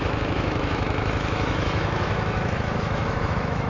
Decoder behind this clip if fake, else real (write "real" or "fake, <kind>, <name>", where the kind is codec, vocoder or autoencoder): fake, autoencoder, DAC-VAE